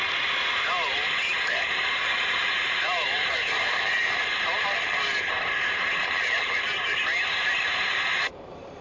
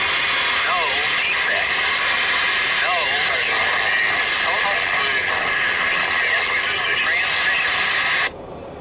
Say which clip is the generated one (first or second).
first